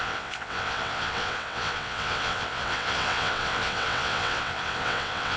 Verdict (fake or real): fake